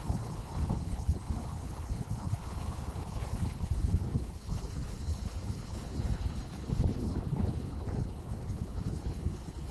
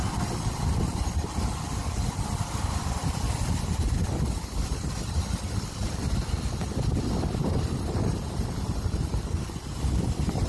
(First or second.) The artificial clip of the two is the first